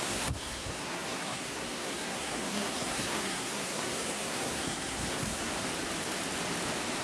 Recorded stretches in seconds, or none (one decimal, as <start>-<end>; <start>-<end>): 5.5-7.0